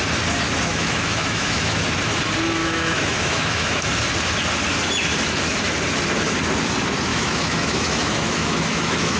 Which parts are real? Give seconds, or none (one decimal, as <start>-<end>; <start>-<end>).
0.0-0.7; 1.8-2.6; 3.9-7.1